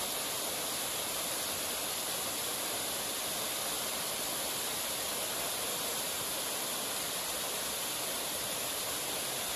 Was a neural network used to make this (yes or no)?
no